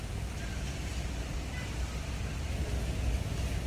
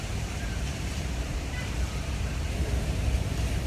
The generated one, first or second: second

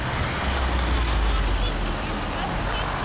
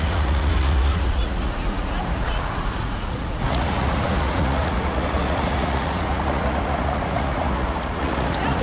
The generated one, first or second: second